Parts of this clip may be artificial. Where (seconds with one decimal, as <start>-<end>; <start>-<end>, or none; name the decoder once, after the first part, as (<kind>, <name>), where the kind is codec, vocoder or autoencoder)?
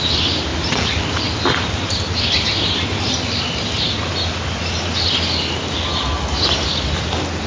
none